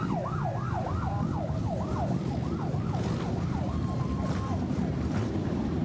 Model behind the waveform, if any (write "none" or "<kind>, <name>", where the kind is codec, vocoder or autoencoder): vocoder, BigVGAN v2